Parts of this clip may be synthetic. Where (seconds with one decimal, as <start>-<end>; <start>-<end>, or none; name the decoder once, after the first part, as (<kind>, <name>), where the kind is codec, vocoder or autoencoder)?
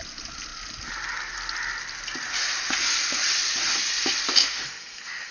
4.4-5.3 (autoencoder, DAC-VAE)